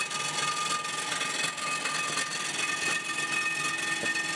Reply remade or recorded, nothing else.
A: recorded